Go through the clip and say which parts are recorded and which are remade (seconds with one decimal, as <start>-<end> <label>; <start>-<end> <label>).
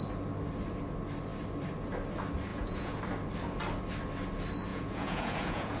0.0-2.5 recorded; 2.5-3.0 remade; 3.0-4.7 recorded; 4.7-5.8 remade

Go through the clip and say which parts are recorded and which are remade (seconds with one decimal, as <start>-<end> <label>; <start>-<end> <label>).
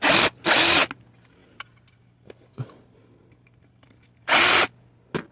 0.0-5.3 recorded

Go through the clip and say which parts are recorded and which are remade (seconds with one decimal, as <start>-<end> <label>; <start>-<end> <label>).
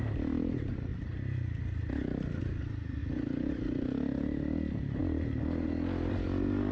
0.0-6.7 recorded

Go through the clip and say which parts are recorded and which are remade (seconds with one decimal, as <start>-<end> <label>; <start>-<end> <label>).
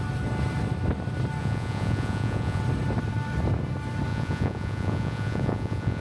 0.0-1.4 recorded; 1.4-2.6 remade; 2.6-4.1 recorded; 4.1-6.0 remade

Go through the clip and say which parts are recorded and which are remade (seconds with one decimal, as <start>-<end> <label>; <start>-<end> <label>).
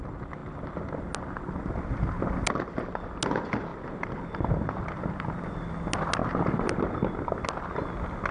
0.0-8.3 recorded